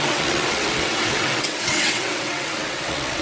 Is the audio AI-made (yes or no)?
yes